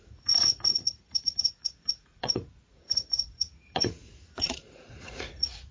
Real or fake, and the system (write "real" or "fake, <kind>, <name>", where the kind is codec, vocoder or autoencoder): fake, vocoder, Vocos